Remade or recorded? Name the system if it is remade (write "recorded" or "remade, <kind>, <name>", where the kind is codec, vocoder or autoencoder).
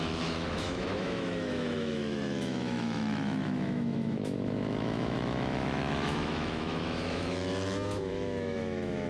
remade, autoencoder, DAC-VAE